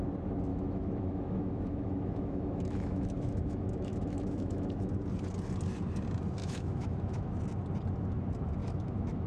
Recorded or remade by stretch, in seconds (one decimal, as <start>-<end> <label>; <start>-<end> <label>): 0.0-0.5 recorded; 0.5-4.9 remade; 4.9-6.4 recorded; 6.4-7.4 remade; 7.4-8.6 recorded; 8.6-9.3 remade